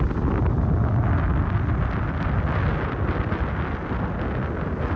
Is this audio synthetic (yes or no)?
no